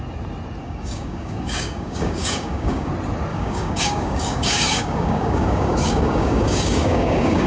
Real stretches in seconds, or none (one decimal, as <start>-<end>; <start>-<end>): 0.0-0.6; 2.9-3.3